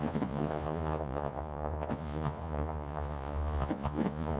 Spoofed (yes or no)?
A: yes